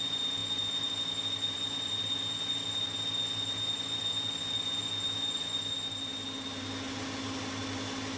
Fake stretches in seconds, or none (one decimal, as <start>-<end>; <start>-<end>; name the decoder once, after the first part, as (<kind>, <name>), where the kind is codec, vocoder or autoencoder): none